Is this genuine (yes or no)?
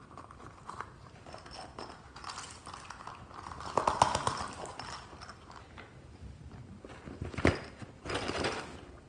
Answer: yes